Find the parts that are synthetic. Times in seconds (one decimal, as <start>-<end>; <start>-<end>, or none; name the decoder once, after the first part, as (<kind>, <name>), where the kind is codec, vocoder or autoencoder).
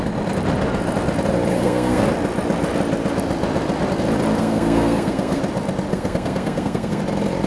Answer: 1.5-2.0 (codec, SNAC); 4.4-5.4; 5.9-7.0